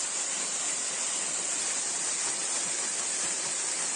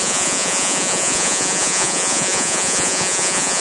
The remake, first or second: second